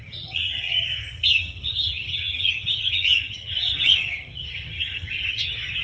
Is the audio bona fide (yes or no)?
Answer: no